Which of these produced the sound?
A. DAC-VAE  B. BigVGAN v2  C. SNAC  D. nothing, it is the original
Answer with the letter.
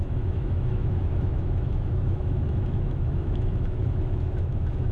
A